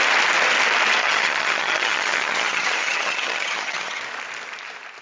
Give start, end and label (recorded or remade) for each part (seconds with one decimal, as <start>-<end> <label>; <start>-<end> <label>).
0.0-1.0 recorded; 1.0-4.0 remade; 4.0-5.0 recorded